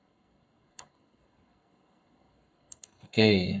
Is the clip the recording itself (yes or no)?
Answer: no